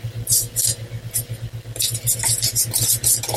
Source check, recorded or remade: recorded